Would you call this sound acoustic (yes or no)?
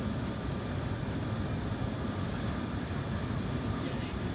no